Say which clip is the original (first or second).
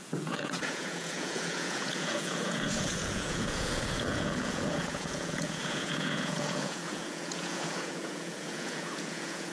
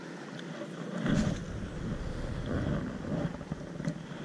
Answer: second